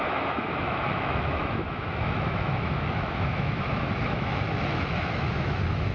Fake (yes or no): yes